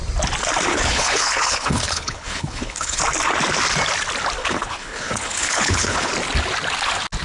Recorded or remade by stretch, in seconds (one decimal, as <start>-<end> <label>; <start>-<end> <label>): 0.0-0.7 recorded; 0.7-3.0 remade; 3.0-4.4 recorded; 4.4-6.1 remade; 6.1-7.2 recorded